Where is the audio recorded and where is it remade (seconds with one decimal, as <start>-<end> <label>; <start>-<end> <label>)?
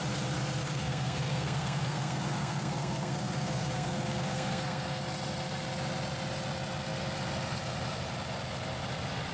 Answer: 0.0-0.6 recorded; 0.6-5.0 remade; 5.0-9.3 recorded